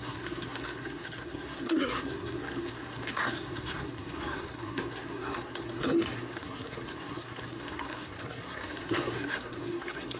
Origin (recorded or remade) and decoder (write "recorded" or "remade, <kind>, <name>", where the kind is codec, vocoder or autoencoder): remade, codec, SNAC